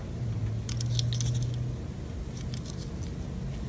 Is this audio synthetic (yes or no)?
no